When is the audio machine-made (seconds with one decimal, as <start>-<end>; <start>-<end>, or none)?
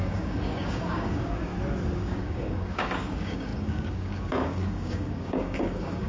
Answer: 0.0-1.5; 2.0-6.1